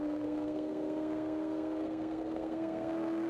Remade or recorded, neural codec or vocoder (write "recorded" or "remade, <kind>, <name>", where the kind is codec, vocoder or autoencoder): remade, codec, SNAC